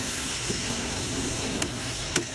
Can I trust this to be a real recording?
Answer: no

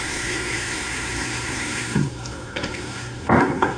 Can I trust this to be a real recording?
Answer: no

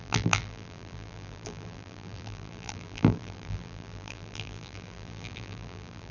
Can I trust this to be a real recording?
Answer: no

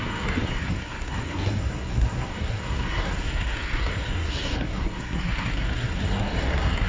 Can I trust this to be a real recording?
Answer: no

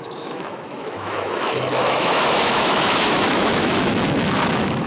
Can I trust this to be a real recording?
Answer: no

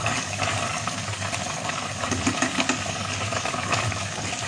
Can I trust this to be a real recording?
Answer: no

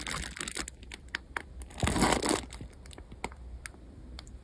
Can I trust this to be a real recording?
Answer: yes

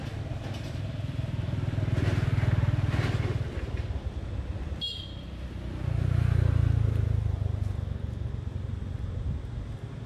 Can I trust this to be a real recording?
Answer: yes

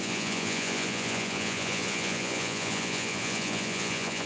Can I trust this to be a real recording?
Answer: no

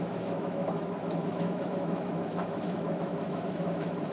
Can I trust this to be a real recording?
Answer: no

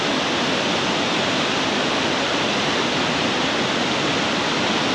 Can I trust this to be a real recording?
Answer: yes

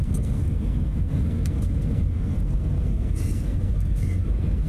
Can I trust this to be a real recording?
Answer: no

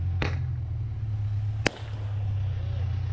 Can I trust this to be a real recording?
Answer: yes